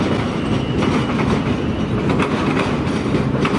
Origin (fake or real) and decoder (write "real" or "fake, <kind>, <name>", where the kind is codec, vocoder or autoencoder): real